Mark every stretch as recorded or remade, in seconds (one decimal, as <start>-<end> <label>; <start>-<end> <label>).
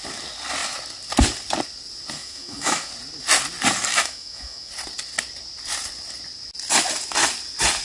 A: 0.0-2.2 recorded; 2.2-2.9 remade; 2.9-3.9 recorded; 3.9-4.7 remade; 4.7-7.8 recorded